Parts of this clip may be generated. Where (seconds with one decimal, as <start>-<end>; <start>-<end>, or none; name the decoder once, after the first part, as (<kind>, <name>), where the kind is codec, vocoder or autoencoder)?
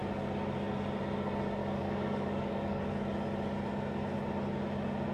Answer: 1.6-2.8 (codec, DAC)